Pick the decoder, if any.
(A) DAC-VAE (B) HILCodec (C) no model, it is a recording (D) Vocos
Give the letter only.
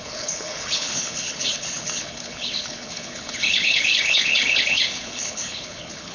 B